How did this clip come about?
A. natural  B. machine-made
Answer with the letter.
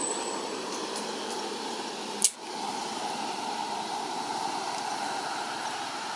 A